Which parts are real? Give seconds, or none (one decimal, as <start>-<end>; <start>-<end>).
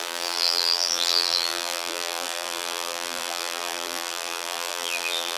none